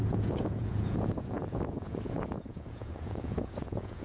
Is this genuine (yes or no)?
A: no